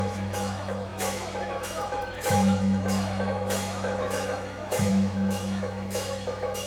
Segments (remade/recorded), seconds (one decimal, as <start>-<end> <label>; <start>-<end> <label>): 0.0-6.7 remade